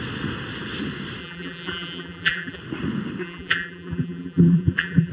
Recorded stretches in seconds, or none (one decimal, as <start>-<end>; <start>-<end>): 0.0-1.2; 2.6-3.2